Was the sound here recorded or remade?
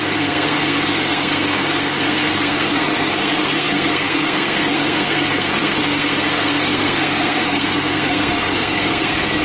remade